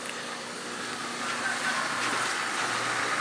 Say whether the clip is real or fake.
real